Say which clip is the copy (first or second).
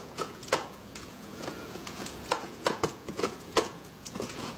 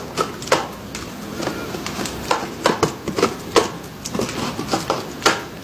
first